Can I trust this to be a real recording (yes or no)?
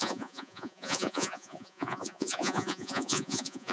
no